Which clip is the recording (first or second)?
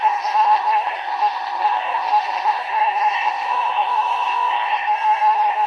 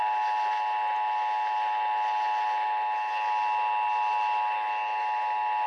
second